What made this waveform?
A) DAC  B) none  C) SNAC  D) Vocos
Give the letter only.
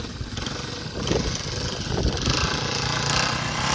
B